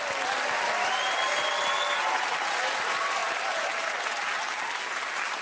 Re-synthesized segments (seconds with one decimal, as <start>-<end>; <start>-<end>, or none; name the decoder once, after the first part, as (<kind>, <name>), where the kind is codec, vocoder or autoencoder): none